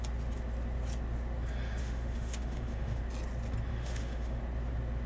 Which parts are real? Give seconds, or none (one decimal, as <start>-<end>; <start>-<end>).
0.0-1.8; 3.0-3.7; 4.4-5.1